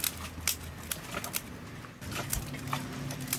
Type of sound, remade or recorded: recorded